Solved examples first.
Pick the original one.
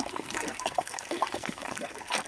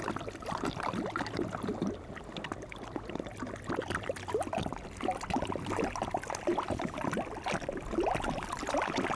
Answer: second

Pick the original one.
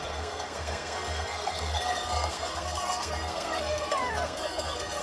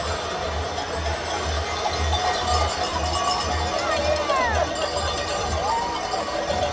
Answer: second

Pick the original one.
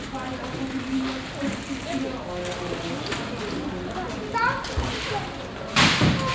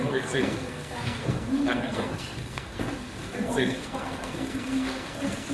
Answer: first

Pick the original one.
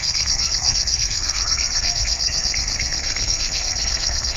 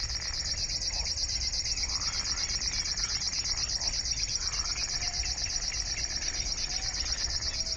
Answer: second